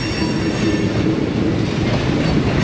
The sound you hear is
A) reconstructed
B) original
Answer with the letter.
B